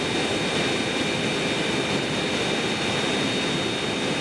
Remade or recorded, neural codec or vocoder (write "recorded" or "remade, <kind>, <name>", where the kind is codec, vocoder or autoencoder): recorded